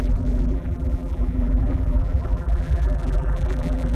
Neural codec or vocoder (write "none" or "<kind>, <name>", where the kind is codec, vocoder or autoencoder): vocoder, BigVGAN v2